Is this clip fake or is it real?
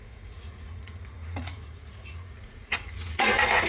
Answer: fake